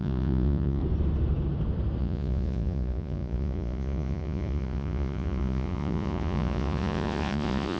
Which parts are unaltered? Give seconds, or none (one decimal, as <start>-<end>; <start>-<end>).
0.8-2.0